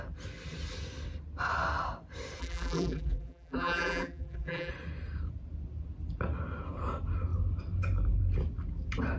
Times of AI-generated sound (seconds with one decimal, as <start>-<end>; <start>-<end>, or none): 2.4-4.7